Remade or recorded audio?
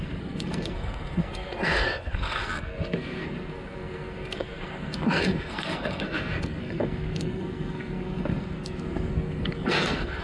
remade